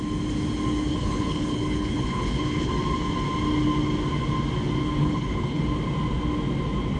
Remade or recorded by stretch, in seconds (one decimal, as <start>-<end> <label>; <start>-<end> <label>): 0.0-0.9 recorded; 0.9-2.7 remade; 2.7-5.0 recorded; 5.0-5.6 remade; 5.6-7.0 recorded